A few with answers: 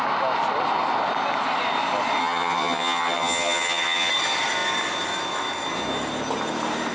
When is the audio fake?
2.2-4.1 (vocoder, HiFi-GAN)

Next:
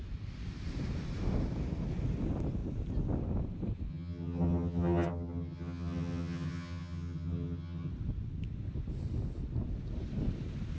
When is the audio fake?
3.9-7.9 (vocoder, HiFi-GAN)

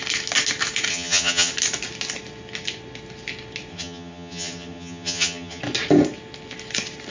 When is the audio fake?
0.9-1.5 (vocoder, HiFi-GAN); 3.7-5.6

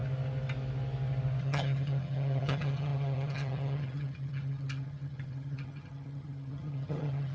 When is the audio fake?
1.4-7.3 (vocoder, HiFi-GAN)